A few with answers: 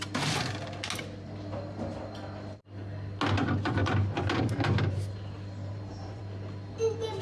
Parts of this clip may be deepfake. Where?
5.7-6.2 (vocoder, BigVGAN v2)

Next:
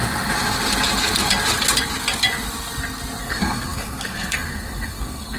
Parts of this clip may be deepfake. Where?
3.2-5.4 (codec, SNAC)